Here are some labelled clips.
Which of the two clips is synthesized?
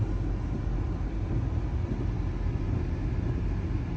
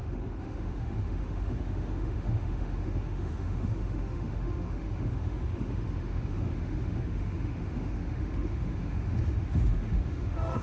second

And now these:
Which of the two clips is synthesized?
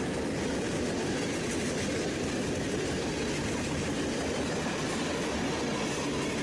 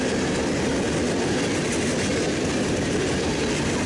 first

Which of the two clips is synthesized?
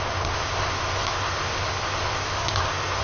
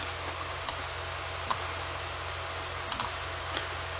first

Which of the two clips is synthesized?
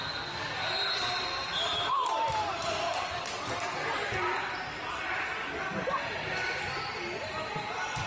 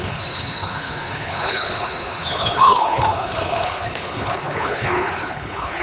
second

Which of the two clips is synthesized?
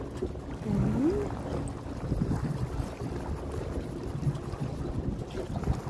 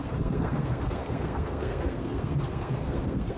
second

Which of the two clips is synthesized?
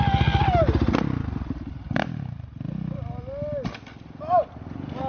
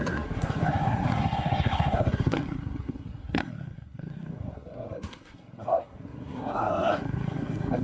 second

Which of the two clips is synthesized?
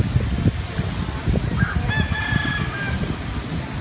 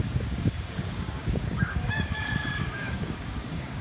second